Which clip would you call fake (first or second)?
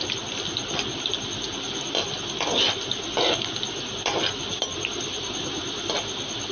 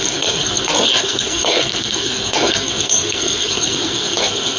second